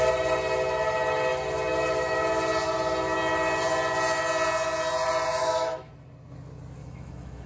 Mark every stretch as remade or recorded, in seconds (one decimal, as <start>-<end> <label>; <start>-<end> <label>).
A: 0.0-5.4 recorded; 5.4-5.9 remade; 5.9-6.8 recorded; 6.8-7.5 remade